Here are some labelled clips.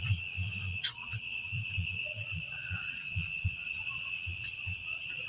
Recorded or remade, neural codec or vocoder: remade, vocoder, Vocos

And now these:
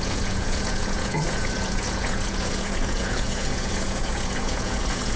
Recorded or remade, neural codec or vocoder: remade, vocoder, Vocos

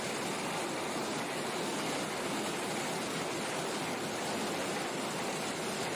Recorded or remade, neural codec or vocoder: recorded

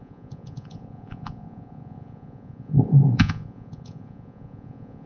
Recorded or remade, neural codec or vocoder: remade, vocoder, Vocos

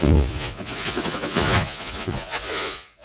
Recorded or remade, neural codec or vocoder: remade, vocoder, Vocos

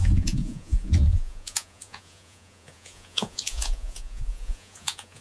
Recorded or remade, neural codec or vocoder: remade, vocoder, Vocos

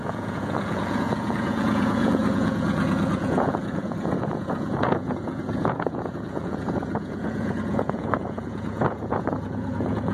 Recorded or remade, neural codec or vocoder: remade, vocoder, Vocos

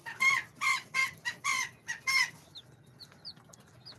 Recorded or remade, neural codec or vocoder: recorded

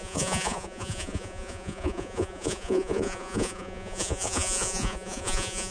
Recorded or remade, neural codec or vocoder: remade, vocoder, Vocos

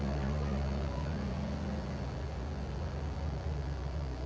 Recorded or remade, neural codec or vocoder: remade, vocoder, Vocos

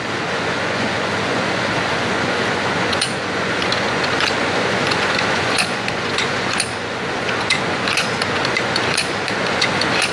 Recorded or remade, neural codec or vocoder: remade, vocoder, Vocos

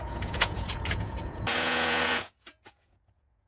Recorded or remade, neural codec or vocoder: remade, vocoder, Vocos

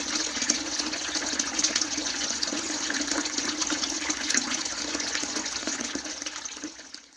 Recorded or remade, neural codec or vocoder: remade, vocoder, Vocos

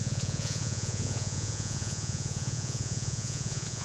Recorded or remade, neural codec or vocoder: remade, vocoder, Vocos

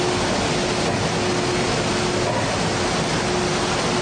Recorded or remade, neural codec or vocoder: recorded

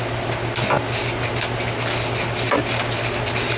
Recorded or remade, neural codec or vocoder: recorded